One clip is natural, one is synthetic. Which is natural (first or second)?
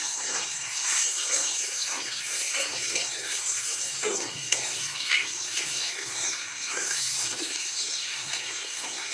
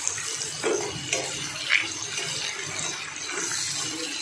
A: second